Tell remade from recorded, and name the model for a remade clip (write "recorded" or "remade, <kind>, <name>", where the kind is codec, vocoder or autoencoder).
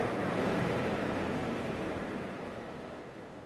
remade, vocoder, BigVGAN v2